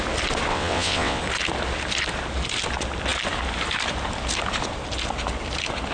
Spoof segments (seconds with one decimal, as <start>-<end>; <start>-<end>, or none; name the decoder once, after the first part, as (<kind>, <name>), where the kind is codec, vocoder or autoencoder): 0.5-1.2 (vocoder, WaveNeXt)

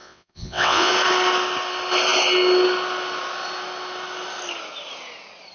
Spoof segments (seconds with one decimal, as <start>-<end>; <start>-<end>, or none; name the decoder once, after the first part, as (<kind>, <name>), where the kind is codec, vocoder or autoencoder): 0.0-0.9 (vocoder, WaveNeXt)